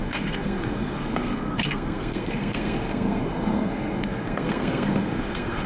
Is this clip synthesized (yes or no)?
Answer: yes